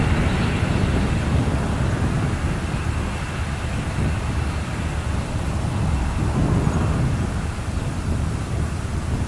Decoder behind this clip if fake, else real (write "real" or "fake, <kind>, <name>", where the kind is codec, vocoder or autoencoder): real